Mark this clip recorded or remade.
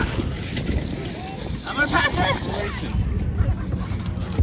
recorded